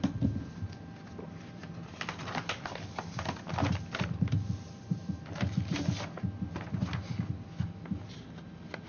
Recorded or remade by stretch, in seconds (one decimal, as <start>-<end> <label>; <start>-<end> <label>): 0.0-8.9 recorded